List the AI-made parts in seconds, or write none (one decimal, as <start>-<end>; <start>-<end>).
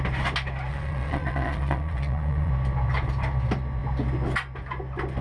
0.7-2.5